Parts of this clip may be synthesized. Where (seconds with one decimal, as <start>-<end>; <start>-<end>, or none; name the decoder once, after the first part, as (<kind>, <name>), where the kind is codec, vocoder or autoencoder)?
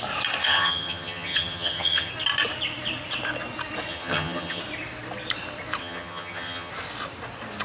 0.4-2.1 (vocoder, HiFi-GAN); 3.9-4.6; 5.8-6.7